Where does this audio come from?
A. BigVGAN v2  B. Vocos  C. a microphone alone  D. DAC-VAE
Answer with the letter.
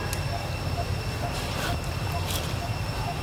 C